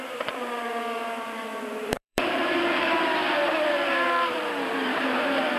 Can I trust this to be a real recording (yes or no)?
no